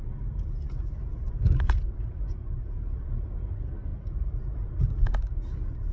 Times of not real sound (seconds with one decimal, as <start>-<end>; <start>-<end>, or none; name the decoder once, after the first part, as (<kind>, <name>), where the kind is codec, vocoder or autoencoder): 2.4-3.3 (vocoder, BigVGAN v2); 3.9-4.7